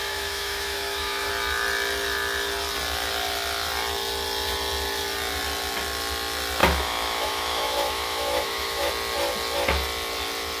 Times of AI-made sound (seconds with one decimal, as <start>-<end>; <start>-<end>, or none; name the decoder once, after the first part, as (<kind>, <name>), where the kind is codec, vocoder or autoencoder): 0.0-1.3 (autoencoder, DAC-VAE); 6.6-8.9